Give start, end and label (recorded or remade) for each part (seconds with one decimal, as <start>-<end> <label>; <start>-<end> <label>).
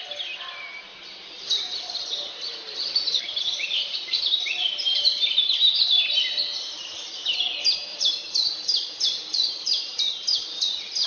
0.0-0.9 recorded; 0.9-6.0 remade; 6.0-7.9 recorded; 7.9-10.1 remade; 10.1-11.1 recorded